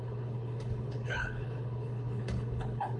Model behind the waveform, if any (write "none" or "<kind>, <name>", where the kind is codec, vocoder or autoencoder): codec, HILCodec